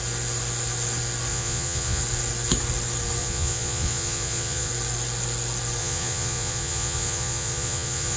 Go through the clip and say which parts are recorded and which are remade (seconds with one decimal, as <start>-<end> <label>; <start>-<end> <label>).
0.0-1.3 recorded; 1.3-2.0 remade; 2.0-3.2 recorded; 3.2-4.7 remade; 4.7-5.8 recorded; 5.8-8.2 remade